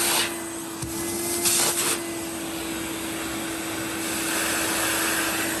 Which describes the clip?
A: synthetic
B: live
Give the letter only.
B